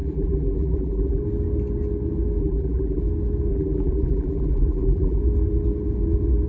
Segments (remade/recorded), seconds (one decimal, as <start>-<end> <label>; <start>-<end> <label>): 0.0-1.2 remade; 1.2-2.4 recorded; 2.4-3.0 remade; 3.0-3.5 recorded; 3.5-5.2 remade; 5.2-6.5 recorded